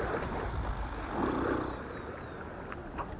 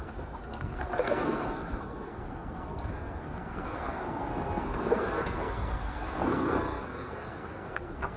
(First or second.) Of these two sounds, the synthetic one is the second